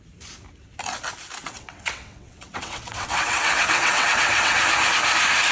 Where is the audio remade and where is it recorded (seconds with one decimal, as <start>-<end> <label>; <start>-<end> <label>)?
0.0-1.4 recorded; 1.4-4.6 remade; 4.6-5.5 recorded